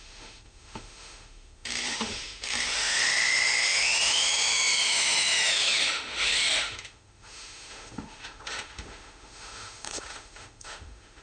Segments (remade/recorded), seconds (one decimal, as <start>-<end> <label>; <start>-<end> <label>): 0.0-11.2 remade